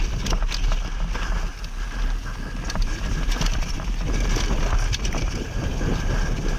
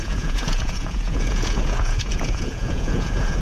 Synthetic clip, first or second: second